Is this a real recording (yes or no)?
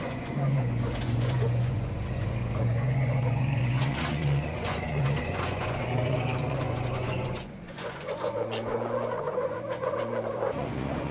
no